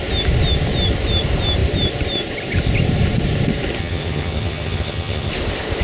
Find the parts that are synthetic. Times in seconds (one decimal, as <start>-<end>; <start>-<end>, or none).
3.8-5.3